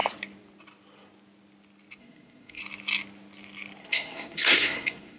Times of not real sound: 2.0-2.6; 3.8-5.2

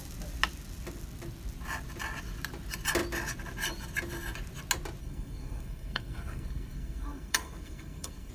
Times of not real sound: 5.0-8.3